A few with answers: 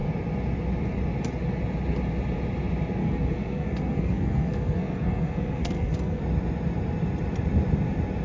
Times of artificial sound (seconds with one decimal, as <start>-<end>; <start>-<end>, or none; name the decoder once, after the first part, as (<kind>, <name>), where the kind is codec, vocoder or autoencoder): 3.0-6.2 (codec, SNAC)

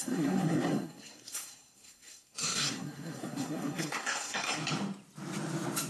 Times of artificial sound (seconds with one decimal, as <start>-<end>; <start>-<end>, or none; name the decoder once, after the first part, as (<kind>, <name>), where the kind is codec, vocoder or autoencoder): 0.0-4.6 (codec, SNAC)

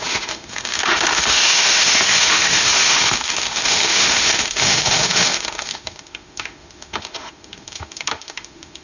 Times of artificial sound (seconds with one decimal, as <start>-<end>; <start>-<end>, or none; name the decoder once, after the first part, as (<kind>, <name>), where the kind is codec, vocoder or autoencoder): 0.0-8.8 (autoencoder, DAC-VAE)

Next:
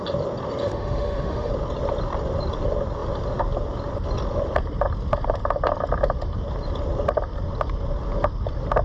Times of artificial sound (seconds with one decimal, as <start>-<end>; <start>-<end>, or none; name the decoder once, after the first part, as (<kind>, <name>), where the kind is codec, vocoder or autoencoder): 0.6-1.5 (autoencoder, DAC-VAE)

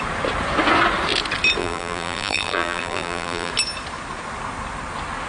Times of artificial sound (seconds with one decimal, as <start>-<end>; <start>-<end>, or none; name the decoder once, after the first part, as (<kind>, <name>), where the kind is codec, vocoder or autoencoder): 1.6-3.5 (vocoder, BigVGAN v2)